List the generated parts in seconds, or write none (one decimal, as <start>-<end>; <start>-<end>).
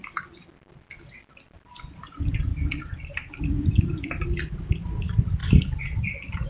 none